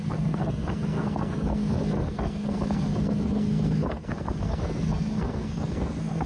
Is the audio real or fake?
fake